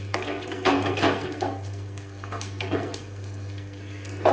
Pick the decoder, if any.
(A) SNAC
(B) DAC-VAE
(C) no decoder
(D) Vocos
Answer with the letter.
A